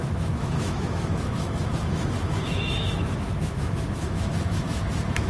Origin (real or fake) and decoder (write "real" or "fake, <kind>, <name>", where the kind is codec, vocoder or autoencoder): fake, autoencoder, DAC-VAE